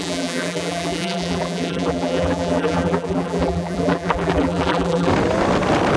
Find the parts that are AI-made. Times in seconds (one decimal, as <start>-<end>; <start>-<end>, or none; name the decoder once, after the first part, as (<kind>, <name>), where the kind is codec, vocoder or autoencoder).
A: 0.0-5.1 (vocoder, BigVGAN v2)